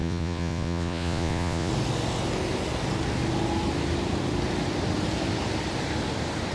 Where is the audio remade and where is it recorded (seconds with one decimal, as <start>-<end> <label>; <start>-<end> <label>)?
0.0-1.7 remade; 1.7-6.5 recorded